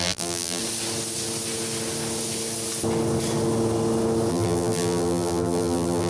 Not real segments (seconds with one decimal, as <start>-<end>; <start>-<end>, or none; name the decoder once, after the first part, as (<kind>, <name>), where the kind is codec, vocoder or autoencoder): 0.0-0.6 (vocoder, BigVGAN v2); 4.3-6.1